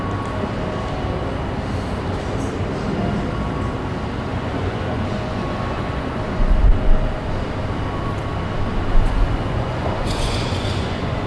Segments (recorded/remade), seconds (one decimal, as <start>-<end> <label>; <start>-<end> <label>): 0.0-4.3 recorded; 4.3-6.6 remade; 6.6-8.9 recorded; 8.9-11.3 remade